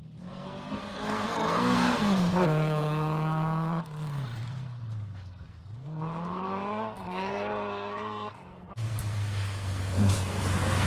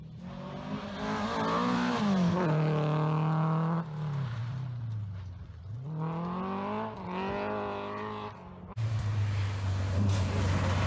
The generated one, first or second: first